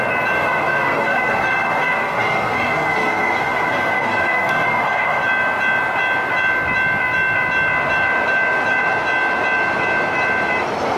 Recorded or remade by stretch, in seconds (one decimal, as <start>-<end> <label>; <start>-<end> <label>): 0.0-0.4 recorded; 0.4-5.2 remade; 5.2-11.0 recorded